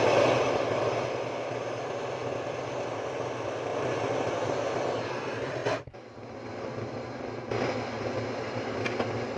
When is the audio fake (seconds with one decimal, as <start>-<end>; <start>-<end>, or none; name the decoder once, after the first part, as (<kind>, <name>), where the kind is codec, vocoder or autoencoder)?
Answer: 3.7-4.2 (vocoder, BigVGAN v2)